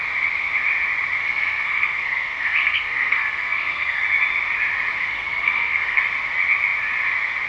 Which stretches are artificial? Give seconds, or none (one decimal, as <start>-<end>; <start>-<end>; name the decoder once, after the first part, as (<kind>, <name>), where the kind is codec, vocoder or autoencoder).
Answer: 1.2-4.0 (codec, SNAC); 5.0-6.0